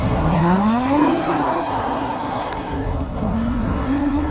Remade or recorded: remade